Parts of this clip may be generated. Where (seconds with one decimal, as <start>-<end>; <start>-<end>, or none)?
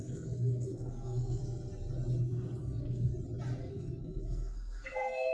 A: 0.0-1.4; 2.6-3.1; 3.6-5.3